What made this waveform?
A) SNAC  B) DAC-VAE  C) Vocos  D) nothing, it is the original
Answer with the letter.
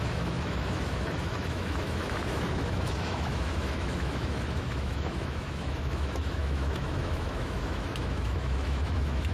B